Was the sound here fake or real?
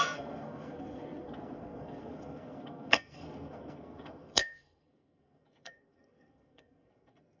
fake